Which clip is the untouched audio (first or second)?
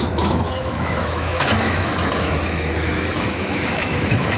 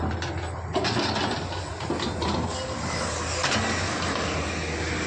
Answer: second